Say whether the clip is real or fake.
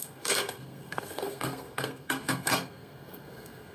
fake